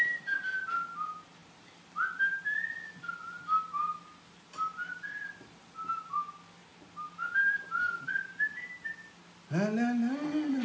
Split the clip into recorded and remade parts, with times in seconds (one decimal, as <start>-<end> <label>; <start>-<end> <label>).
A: 0.0-10.6 recorded